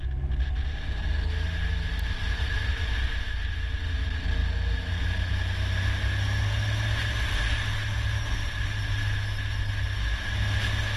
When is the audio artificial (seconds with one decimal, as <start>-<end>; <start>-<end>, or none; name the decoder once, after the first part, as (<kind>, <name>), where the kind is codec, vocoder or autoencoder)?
none